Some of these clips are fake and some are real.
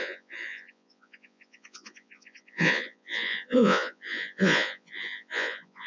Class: fake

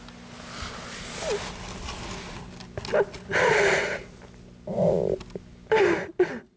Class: real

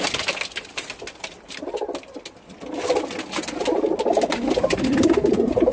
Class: real